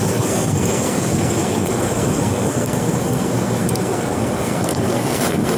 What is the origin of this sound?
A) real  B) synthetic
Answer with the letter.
B